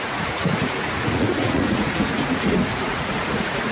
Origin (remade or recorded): remade